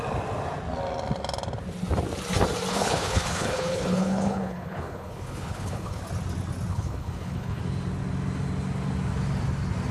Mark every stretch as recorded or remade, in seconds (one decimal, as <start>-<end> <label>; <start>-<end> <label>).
0.0-2.7 recorded; 2.7-6.0 remade; 6.0-6.7 recorded; 6.7-7.6 remade; 7.6-9.9 recorded